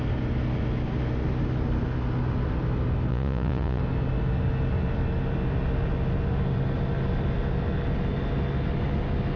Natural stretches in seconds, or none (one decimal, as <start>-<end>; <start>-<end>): 0.0-3.1; 3.8-9.4